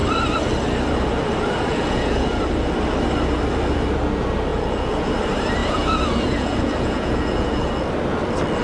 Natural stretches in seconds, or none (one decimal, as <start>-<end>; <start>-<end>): 0.0-1.7; 2.4-4.5; 5.1-5.6; 7.6-8.6